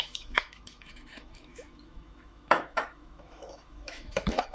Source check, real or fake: fake